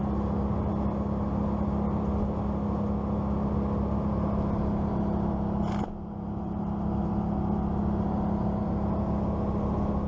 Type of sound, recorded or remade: recorded